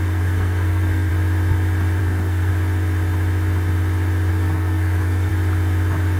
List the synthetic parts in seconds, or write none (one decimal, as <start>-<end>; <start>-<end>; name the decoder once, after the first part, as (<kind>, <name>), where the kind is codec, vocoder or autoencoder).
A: 0.0-1.1 (codec, SNAC); 2.0-2.5; 4.3-5.3